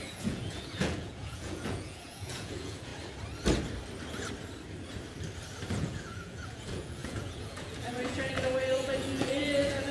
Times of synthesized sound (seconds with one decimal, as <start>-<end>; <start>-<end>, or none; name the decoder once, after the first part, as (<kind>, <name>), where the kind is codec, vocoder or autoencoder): 0.0-2.9 (vocoder, Vocos); 5.8-9.9